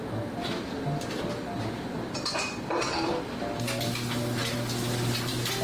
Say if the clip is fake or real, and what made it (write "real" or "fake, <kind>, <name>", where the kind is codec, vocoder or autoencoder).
real